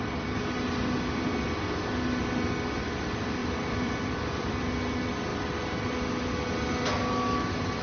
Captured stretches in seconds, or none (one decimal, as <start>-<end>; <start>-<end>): 0.0-3.4; 4.8-5.3; 5.9-7.8